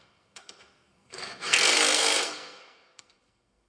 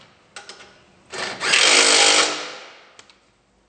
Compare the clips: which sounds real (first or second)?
second